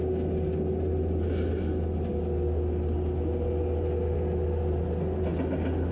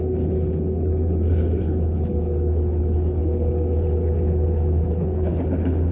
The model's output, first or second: second